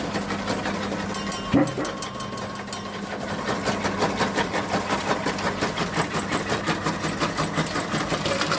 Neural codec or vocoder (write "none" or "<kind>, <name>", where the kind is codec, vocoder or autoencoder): none